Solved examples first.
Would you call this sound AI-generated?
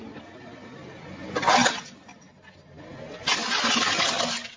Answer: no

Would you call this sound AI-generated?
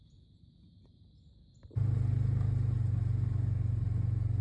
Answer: no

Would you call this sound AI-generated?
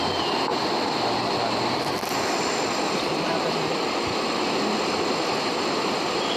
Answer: no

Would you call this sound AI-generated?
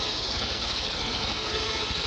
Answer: yes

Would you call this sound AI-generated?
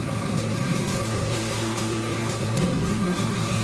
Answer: yes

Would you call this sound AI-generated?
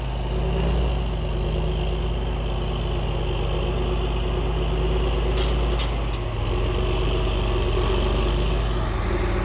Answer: no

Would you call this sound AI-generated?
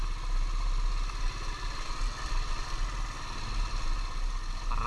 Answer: no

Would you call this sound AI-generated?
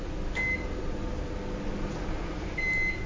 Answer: no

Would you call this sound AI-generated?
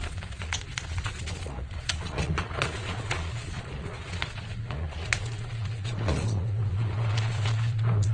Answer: yes